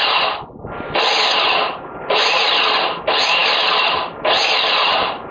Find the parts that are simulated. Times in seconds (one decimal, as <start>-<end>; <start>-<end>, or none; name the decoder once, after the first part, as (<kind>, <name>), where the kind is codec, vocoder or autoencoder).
1.9-2.5 (vocoder, BigVGAN v2)